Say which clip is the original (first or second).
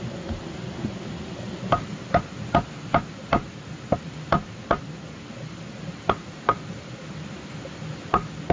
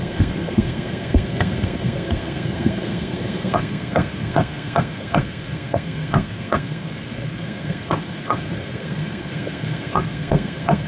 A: first